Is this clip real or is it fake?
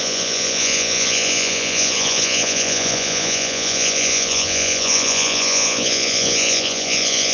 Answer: fake